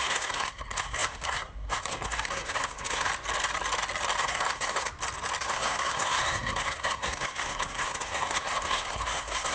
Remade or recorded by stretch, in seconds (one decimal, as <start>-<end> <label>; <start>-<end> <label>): 0.0-3.1 remade; 3.1-4.2 recorded; 4.2-4.9 remade; 4.9-5.4 recorded; 5.4-9.5 remade